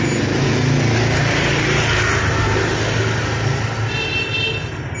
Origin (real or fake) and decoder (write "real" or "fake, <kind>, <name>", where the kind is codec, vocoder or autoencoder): real